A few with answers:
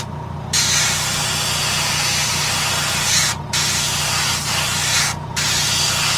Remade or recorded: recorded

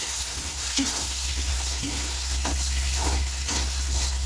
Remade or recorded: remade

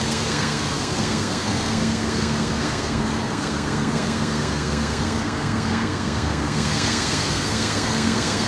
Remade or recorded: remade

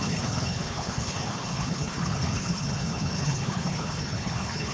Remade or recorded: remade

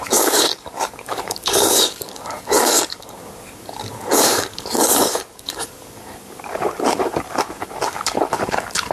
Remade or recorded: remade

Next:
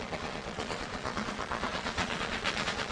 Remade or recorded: remade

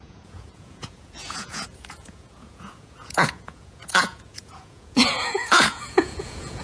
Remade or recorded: remade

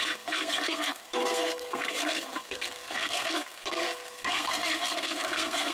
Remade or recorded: remade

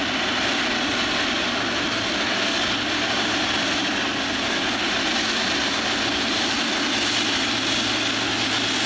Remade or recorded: recorded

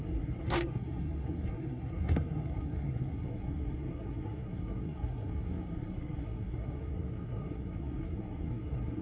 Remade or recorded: remade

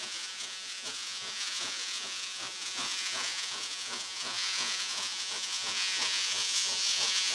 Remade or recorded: remade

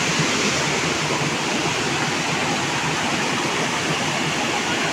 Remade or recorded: recorded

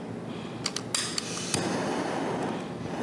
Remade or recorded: recorded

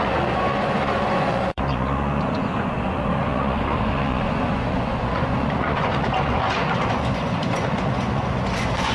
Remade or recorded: remade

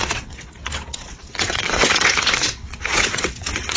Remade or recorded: remade